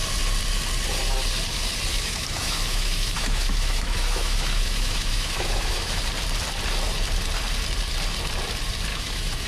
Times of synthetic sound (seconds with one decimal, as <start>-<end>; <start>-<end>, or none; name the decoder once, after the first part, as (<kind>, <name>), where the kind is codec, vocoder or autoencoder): 1.9-6.0 (autoencoder, DAC-VAE); 8.9-9.5

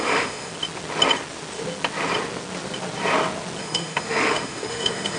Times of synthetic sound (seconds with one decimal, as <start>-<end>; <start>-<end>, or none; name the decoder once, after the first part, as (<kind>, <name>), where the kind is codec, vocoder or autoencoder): 0.0-0.5 (autoencoder, DAC-VAE); 3.6-5.2